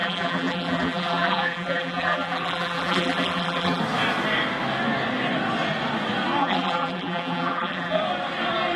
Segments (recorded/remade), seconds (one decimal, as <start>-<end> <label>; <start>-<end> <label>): 0.0-3.8 remade; 3.8-6.4 recorded; 6.4-8.0 remade; 8.0-8.8 recorded